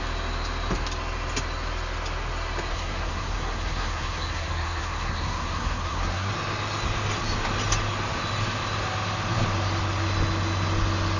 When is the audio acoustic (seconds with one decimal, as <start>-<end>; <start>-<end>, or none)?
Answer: 0.0-2.7; 6.3-11.2